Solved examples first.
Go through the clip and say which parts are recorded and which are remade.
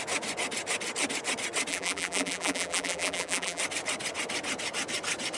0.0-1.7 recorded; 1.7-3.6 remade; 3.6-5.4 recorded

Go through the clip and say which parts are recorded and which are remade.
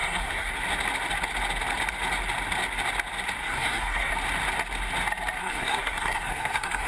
0.0-0.5 remade; 0.5-3.4 recorded; 3.4-4.1 remade; 4.1-5.4 recorded; 5.4-6.9 remade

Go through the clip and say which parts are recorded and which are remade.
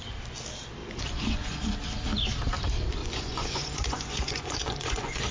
0.0-0.8 recorded; 0.8-1.6 remade; 1.6-3.0 recorded; 3.0-5.3 remade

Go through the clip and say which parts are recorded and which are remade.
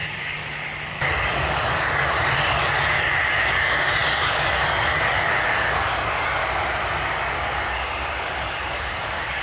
0.0-6.4 remade; 6.4-7.0 recorded; 7.0-9.4 remade